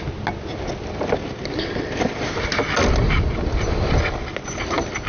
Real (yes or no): yes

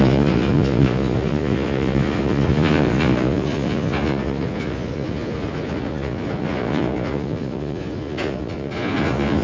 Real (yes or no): no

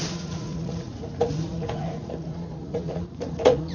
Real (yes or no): no